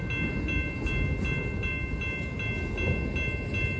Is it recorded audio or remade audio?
recorded